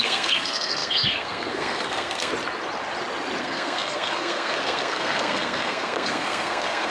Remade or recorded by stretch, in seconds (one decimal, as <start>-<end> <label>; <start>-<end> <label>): 0.0-2.3 remade; 2.3-3.4 recorded; 3.4-6.9 remade

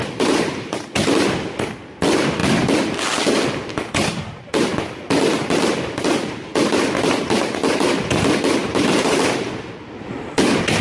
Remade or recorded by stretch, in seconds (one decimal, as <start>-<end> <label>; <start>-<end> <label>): 0.0-0.7 remade; 0.7-8.6 recorded; 8.6-9.5 remade; 9.5-10.8 recorded

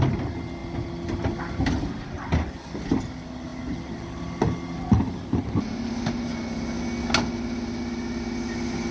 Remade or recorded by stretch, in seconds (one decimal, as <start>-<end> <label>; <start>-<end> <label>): 0.0-8.9 recorded